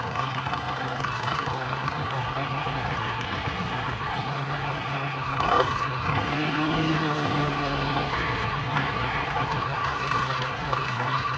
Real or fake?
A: fake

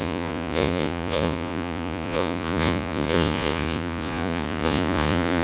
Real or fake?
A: fake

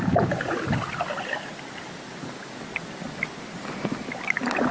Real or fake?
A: real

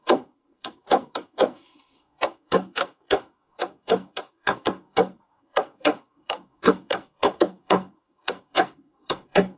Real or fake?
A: fake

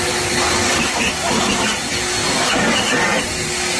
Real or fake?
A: real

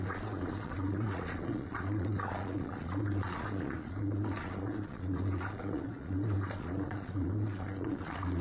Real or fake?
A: fake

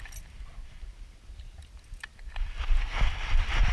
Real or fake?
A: real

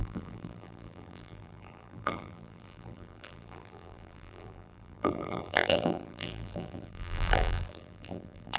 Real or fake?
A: fake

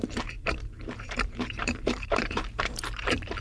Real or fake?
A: fake